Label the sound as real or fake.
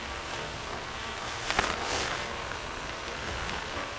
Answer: fake